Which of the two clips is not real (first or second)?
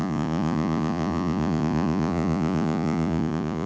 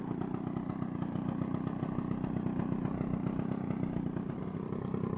first